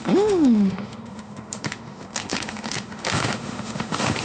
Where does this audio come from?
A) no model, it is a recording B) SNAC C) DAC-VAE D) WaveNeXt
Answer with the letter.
C